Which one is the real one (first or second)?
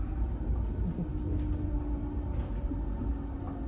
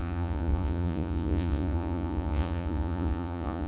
first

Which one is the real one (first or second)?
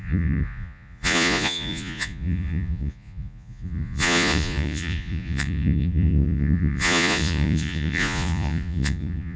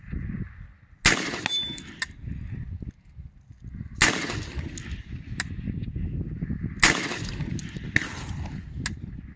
second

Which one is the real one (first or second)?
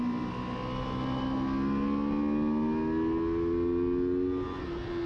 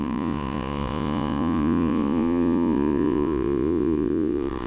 first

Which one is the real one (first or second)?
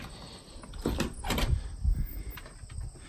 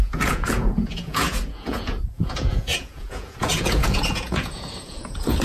first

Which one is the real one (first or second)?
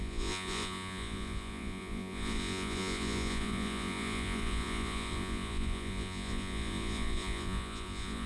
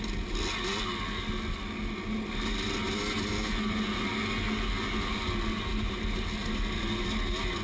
second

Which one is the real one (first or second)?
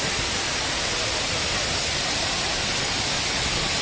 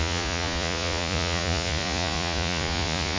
first